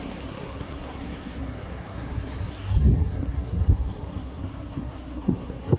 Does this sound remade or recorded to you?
remade